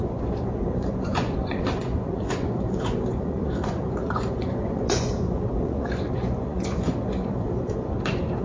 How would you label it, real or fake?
fake